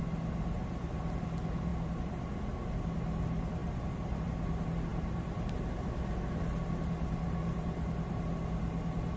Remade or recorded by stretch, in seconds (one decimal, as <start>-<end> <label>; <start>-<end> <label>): 0.0-3.6 recorded; 3.6-4.3 remade; 4.3-9.2 recorded